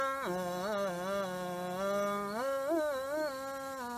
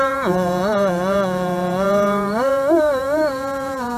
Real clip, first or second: first